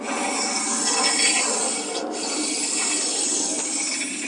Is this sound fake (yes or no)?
no